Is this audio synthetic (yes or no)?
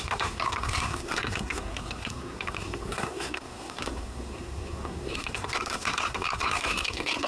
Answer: yes